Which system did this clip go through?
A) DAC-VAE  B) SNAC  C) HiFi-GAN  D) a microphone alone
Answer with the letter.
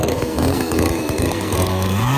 B